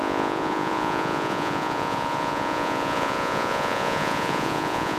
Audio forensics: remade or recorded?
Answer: remade